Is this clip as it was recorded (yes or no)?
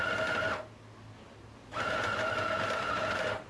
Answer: yes